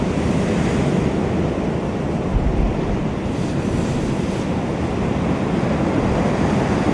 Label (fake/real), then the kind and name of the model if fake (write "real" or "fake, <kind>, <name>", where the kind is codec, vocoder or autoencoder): real